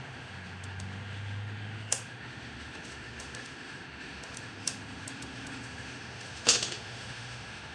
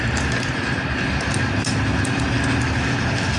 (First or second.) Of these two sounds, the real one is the second